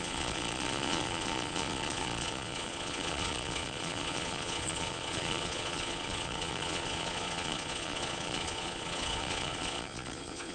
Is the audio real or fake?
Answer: fake